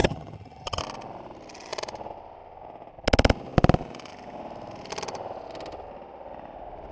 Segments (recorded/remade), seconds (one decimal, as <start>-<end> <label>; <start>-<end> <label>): 0.0-0.8 remade; 0.8-6.9 recorded

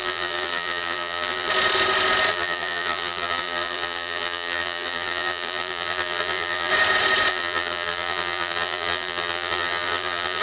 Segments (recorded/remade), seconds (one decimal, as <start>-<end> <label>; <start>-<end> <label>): 0.0-1.5 remade; 1.5-2.3 recorded; 2.3-6.7 remade; 6.7-7.3 recorded; 7.3-10.4 remade

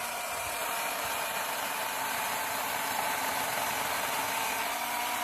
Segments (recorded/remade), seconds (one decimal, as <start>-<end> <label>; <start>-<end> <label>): 0.0-5.2 remade

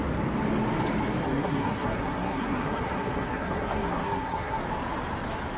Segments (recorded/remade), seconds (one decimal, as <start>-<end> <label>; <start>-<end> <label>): 0.0-1.2 recorded; 1.2-4.6 remade; 4.6-5.6 recorded

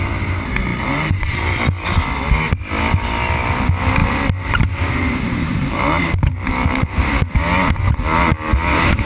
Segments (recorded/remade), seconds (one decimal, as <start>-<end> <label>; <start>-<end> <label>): 0.0-0.7 recorded; 0.7-1.6 remade; 1.6-4.0 recorded; 4.0-7.0 remade; 7.0-9.1 recorded

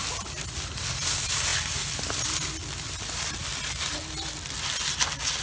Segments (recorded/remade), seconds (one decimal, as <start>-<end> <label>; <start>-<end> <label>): 0.0-5.4 recorded